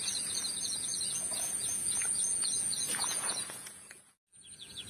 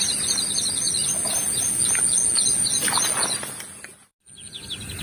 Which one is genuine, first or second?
second